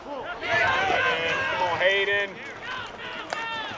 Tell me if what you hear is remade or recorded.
recorded